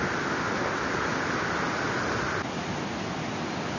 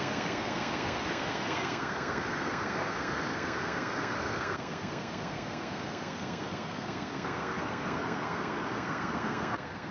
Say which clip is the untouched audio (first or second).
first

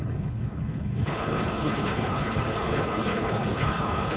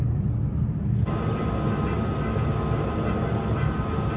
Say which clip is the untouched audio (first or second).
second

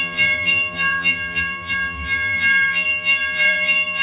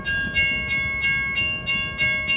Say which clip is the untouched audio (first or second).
second